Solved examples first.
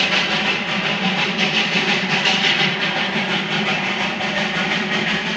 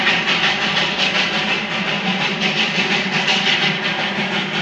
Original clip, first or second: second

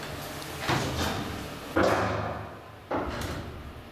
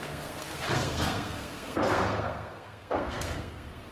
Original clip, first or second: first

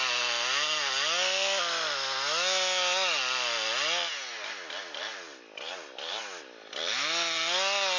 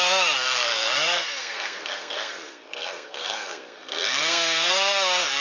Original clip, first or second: first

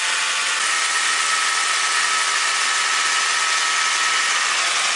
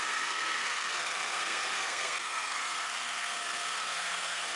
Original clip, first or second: first